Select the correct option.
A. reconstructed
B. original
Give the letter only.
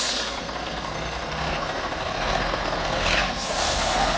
A